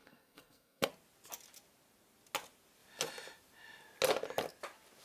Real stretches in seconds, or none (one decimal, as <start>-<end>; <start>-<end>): 0.9-5.0